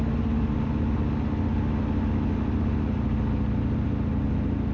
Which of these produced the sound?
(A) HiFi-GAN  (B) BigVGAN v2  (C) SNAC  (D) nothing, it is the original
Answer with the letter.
D